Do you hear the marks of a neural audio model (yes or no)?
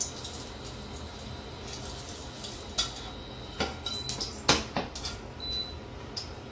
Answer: no